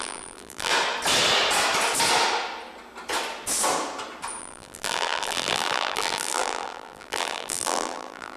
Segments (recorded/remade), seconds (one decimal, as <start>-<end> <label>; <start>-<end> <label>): 0.0-0.7 remade; 0.7-4.4 recorded; 4.4-8.4 remade